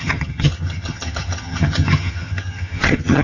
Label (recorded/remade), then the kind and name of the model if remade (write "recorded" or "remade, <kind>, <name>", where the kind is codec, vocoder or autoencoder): remade, vocoder, HiFi-GAN